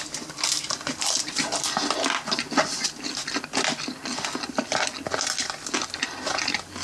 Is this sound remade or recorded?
recorded